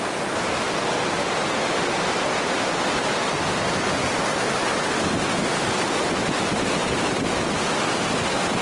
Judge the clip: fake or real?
real